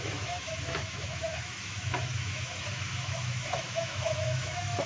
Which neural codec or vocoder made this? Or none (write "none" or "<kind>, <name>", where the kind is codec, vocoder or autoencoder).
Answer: autoencoder, DAC-VAE